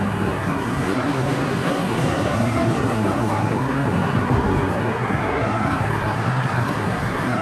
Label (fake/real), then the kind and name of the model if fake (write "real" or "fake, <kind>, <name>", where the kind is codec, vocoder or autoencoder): fake, codec, SNAC